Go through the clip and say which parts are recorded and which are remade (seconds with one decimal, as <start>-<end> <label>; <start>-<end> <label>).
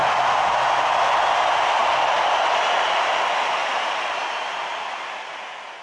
0.0-0.9 remade; 0.9-3.6 recorded; 3.6-5.2 remade; 5.2-5.8 recorded